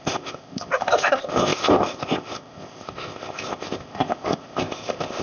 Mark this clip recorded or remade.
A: remade